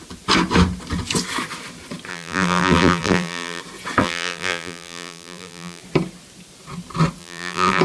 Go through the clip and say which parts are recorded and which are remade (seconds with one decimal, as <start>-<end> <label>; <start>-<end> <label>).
0.0-2.1 recorded; 2.1-3.6 remade; 3.6-4.0 recorded; 4.0-5.8 remade; 5.8-7.2 recorded; 7.2-7.8 remade